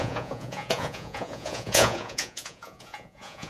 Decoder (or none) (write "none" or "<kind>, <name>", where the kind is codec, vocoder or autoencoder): vocoder, Vocos